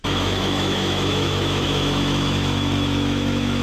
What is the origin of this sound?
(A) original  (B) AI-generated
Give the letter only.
B